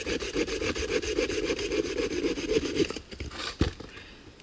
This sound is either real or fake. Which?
real